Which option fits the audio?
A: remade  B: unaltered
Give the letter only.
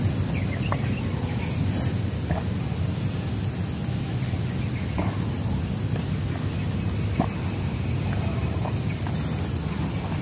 B